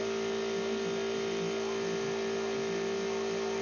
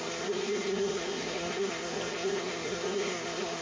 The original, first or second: first